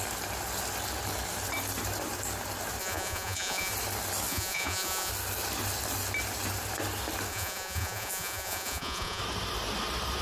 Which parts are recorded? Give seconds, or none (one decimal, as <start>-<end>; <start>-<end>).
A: 0.0-2.8; 3.7-4.3; 5.1-7.3; 9.2-10.2